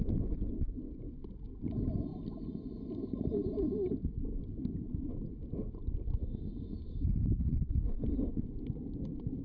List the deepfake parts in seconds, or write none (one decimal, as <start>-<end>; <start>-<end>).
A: 2.1-3.0